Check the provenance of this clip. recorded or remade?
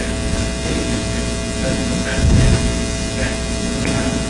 recorded